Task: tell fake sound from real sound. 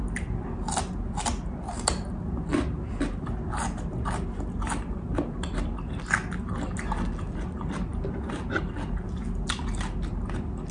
real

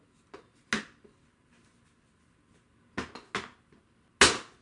real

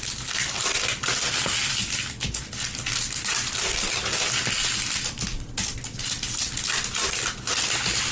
real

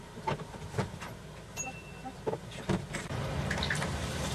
fake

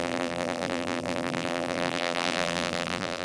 fake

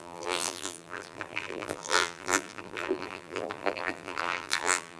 fake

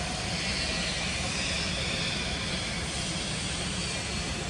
fake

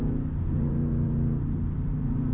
fake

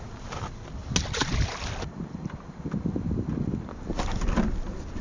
real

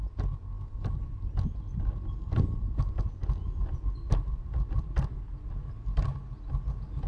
real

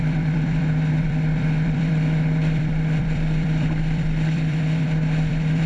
fake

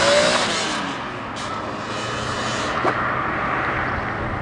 real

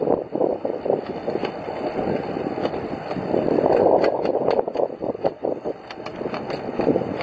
real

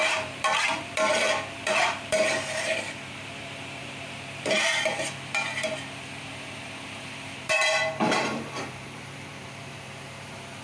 fake